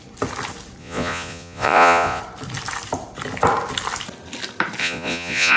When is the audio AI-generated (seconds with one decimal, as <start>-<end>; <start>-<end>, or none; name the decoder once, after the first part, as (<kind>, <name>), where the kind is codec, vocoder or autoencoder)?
0.8-2.2 (vocoder, Vocos); 4.8-5.6